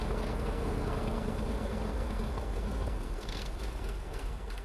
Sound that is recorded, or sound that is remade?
remade